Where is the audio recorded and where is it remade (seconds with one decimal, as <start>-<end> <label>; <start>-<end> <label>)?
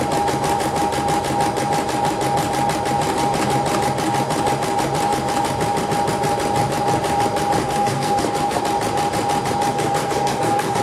0.0-7.6 recorded; 7.6-8.6 remade; 8.6-9.7 recorded; 9.7-10.8 remade